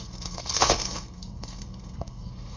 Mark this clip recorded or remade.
remade